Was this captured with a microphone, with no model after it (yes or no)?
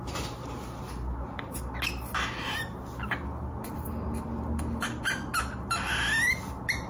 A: yes